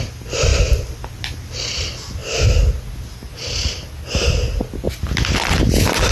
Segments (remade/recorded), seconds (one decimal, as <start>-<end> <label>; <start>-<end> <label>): 0.0-6.1 recorded